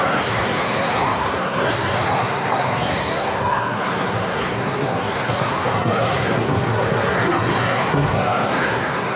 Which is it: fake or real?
fake